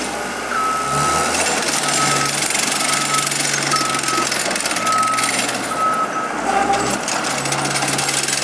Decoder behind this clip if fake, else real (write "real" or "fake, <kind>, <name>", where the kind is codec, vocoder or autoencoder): real